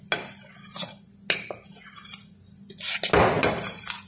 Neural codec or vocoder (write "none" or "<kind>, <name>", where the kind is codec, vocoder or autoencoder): none